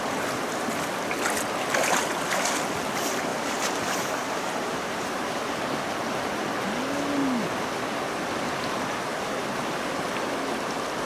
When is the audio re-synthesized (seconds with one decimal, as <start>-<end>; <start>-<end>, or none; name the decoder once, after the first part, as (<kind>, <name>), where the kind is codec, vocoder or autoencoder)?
3.3-5.6 (vocoder, BigVGAN v2); 9.1-10.1

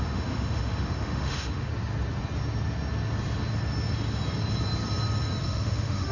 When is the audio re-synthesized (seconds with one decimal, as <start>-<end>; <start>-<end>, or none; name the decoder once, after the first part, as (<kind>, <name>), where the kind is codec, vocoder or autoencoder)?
0.0-1.7 (autoencoder, DAC-VAE); 5.4-6.1

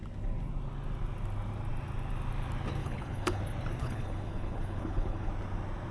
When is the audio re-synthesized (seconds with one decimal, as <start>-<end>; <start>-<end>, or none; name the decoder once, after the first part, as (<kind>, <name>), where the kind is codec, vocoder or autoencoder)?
2.8-3.4 (codec, HILCodec); 3.8-5.3